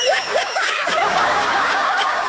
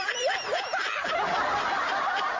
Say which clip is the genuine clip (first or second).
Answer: second